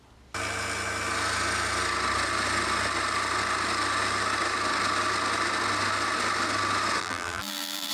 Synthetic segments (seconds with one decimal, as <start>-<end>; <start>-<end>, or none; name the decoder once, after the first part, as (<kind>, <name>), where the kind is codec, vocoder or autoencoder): 7.0-7.9 (vocoder, BigVGAN v2)